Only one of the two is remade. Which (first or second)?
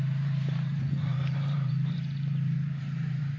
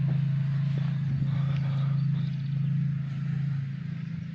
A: first